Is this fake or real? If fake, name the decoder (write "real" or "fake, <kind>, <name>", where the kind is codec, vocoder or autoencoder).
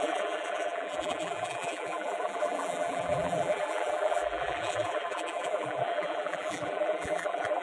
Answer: fake, vocoder, BigVGAN v2